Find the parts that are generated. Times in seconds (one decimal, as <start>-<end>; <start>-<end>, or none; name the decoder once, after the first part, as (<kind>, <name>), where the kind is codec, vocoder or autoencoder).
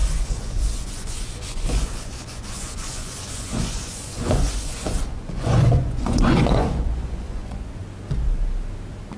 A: 0.0-7.8 (vocoder, Vocos)